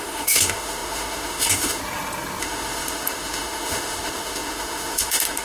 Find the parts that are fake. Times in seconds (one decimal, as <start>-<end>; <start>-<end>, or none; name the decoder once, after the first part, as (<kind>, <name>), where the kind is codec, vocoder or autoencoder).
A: 0.0-1.8 (autoencoder, DAC-VAE); 2.4-5.4